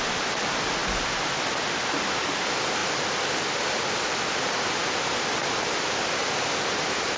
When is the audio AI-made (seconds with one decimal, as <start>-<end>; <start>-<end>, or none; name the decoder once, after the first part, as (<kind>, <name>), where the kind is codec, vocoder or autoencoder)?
none